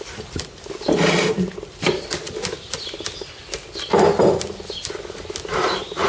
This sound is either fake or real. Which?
real